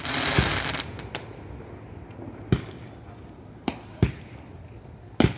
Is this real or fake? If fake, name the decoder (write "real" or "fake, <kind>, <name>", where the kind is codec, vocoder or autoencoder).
real